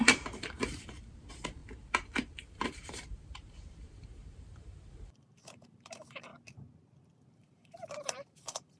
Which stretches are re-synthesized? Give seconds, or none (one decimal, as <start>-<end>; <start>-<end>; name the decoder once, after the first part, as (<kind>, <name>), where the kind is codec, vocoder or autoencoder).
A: 0.0-6.3 (vocoder, BigVGAN v2); 7.3-8.8